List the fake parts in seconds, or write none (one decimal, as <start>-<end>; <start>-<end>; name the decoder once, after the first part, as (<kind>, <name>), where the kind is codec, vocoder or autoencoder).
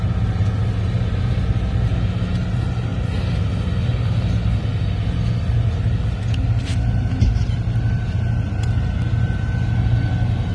none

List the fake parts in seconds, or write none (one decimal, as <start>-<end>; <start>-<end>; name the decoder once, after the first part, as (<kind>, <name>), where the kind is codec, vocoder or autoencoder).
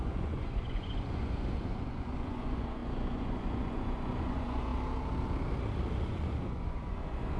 0.0-4.7 (vocoder, Vocos); 6.1-7.4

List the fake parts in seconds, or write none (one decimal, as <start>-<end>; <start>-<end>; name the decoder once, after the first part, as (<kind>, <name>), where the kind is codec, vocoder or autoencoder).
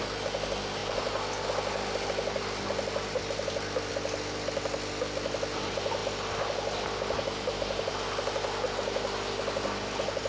none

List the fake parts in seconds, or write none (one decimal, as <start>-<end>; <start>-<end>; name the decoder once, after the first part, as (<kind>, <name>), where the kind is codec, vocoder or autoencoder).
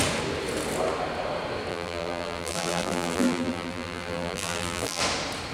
1.7-5.0 (vocoder, BigVGAN v2)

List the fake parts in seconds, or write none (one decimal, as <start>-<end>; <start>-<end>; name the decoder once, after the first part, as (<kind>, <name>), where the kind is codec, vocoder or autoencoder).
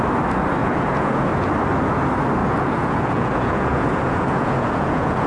0.6-1.3 (vocoder, Vocos); 2.4-5.3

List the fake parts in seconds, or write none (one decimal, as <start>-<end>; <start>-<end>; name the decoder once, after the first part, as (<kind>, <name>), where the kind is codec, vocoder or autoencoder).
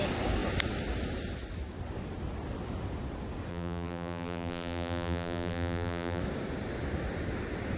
3.5-6.2 (vocoder, BigVGAN v2)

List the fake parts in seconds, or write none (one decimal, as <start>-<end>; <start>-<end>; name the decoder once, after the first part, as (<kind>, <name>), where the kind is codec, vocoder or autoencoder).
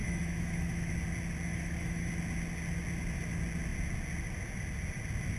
0.0-0.9 (autoencoder, DAC-VAE); 1.5-2.1